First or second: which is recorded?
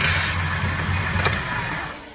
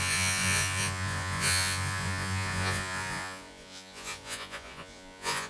first